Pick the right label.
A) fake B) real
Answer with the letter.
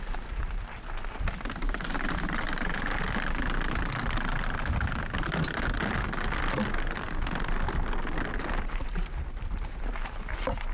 B